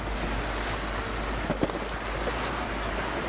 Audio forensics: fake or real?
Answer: real